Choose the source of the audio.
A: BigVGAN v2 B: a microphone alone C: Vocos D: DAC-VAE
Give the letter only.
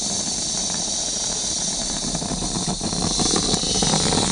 A